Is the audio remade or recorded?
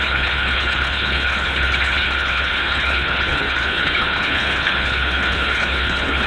remade